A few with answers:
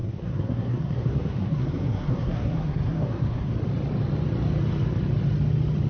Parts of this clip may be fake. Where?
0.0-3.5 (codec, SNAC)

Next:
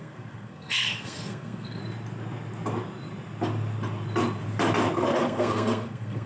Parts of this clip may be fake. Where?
0.0-1.8 (codec, SNAC); 5.2-6.3

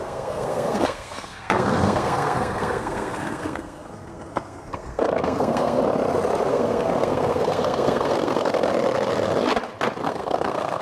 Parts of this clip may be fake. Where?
0.0-5.8 (codec, SNAC); 6.5-8.7; 10.0-10.8

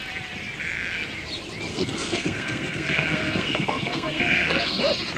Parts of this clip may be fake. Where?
1.7-4.8 (codec, SNAC)